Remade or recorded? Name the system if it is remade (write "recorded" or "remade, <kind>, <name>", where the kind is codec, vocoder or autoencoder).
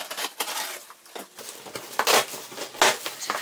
recorded